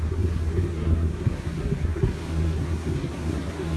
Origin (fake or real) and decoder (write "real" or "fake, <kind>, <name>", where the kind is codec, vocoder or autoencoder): fake, codec, SNAC